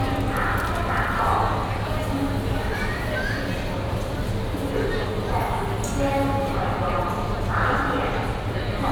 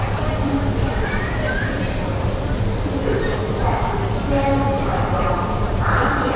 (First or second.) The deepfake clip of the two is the second